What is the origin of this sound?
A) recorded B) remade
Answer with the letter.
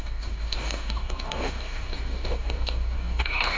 B